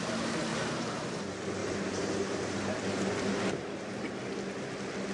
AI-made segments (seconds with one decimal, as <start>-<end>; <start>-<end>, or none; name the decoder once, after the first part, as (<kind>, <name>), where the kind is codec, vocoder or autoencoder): 0.5-1.2 (vocoder, BigVGAN v2); 1.6-4.2